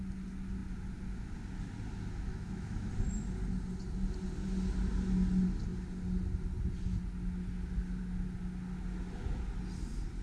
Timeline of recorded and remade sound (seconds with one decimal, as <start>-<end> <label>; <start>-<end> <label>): 0.0-2.3 recorded; 2.3-2.9 remade; 2.9-10.2 recorded